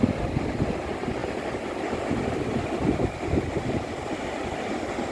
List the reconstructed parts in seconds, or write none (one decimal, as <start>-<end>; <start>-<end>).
none

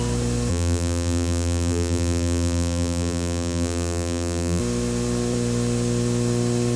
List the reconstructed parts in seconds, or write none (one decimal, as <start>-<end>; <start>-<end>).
0.5-4.6

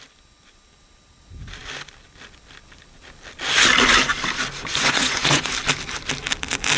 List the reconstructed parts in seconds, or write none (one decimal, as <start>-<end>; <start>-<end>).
4.7-5.5

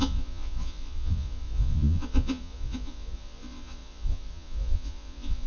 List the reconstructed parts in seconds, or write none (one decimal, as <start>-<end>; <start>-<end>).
0.0-5.5

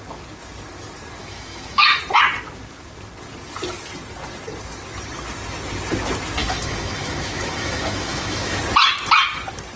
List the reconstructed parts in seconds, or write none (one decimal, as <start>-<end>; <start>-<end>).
1.2-2.0; 6.4-8.6